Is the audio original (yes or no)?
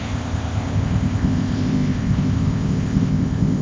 no